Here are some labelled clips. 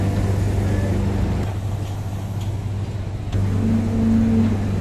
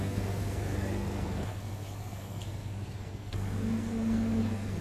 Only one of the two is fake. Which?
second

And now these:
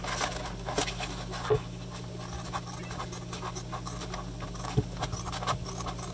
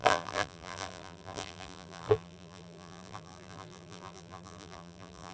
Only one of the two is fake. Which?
second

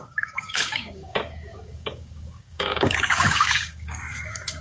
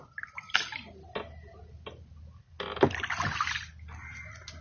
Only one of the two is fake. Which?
first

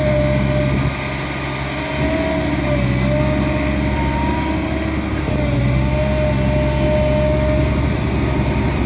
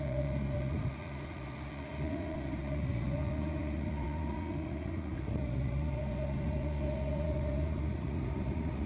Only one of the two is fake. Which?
second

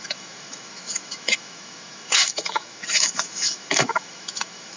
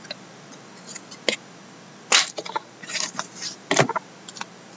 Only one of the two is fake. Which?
first